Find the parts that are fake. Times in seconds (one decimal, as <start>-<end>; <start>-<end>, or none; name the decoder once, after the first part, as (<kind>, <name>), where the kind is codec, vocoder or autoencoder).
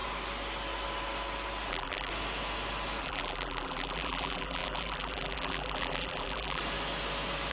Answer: 1.7-2.1 (vocoder, BigVGAN v2); 3.0-6.6